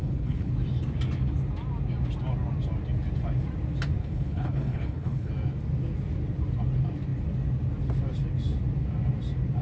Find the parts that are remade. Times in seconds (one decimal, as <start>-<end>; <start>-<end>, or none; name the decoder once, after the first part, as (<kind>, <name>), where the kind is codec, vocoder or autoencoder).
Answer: 0.0-0.5 (codec, HILCodec); 4.0-5.3